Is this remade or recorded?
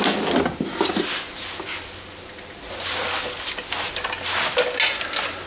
recorded